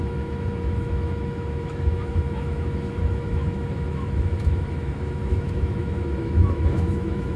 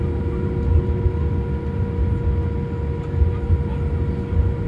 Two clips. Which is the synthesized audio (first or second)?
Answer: first